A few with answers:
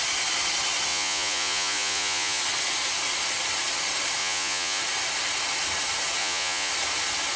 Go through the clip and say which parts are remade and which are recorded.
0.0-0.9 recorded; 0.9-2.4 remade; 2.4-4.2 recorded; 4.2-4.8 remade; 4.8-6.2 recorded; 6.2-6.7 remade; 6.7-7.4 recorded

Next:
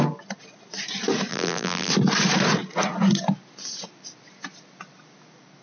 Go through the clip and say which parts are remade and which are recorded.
0.0-1.3 recorded; 1.3-1.9 remade; 1.9-5.6 recorded

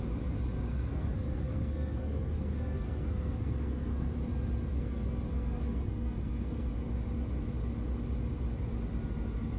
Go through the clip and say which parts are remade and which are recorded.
0.0-0.7 recorded; 0.7-4.1 remade; 4.1-4.7 recorded; 4.7-6.7 remade; 6.7-9.6 recorded

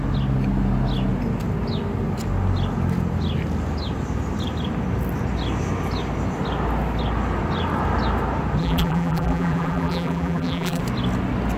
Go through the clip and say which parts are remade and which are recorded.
0.0-8.6 recorded; 8.6-10.8 remade; 10.8-11.6 recorded

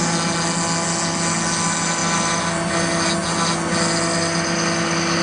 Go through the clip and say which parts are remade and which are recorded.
0.0-5.2 recorded